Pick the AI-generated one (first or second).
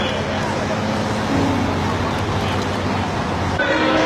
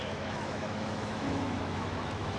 second